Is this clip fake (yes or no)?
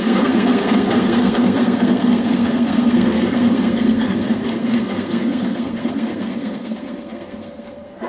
yes